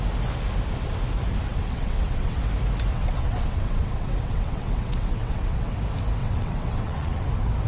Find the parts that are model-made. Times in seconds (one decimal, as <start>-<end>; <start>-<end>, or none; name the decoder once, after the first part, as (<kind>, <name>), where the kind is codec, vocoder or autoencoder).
1.5-2.4 (vocoder, WaveNeXt); 2.9-5.8; 6.2-7.2